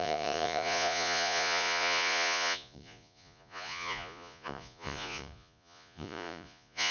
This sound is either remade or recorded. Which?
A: remade